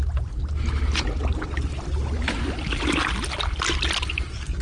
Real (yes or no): yes